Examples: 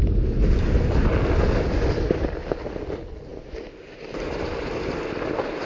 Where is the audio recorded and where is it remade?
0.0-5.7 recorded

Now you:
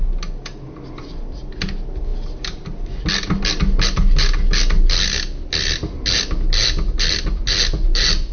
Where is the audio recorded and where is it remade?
0.0-8.3 recorded

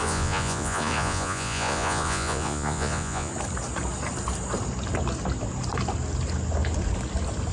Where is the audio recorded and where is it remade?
0.0-3.3 remade; 3.3-7.5 recorded